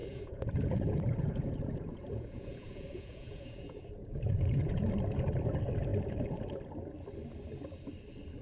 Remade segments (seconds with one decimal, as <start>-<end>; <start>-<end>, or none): 0.0-4.9